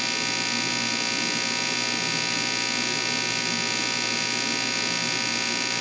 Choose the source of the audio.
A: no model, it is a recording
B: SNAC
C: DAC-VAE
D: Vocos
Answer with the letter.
A